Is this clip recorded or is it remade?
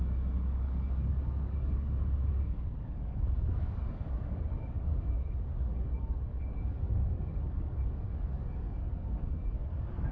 remade